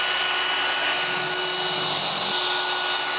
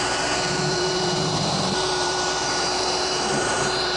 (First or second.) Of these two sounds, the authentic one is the first